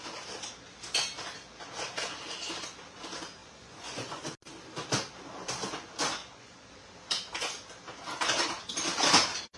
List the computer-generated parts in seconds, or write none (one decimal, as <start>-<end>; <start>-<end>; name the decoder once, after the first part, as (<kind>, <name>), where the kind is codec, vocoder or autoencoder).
3.4-4.2 (vocoder, Vocos); 6.2-6.7